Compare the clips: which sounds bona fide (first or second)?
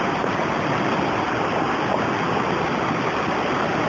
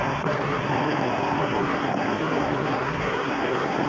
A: first